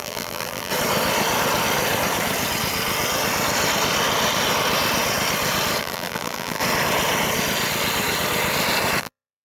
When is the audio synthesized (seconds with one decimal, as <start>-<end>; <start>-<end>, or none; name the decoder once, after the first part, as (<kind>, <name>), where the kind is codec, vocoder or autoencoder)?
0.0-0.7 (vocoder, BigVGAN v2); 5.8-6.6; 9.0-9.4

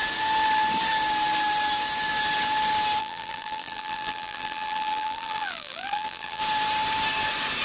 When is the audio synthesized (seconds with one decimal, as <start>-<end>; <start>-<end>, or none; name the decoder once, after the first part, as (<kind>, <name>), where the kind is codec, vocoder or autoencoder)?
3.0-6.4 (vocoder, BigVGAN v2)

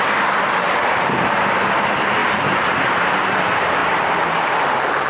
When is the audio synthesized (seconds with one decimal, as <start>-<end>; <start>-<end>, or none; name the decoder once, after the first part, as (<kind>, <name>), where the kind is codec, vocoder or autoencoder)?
2.2-3.4 (vocoder, BigVGAN v2); 3.8-4.6

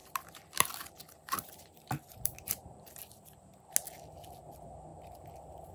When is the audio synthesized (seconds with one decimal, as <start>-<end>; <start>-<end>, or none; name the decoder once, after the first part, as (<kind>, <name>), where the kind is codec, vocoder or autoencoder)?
0.0-3.4 (vocoder, BigVGAN v2); 4.9-5.7